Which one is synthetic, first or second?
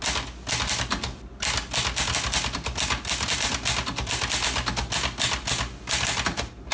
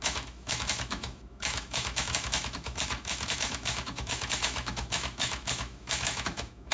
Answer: second